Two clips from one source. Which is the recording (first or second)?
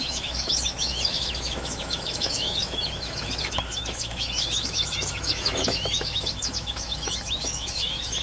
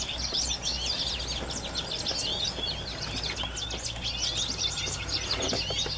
second